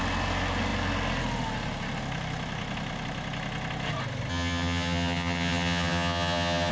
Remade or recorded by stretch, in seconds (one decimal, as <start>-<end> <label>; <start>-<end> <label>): 0.0-4.3 recorded; 4.3-6.7 remade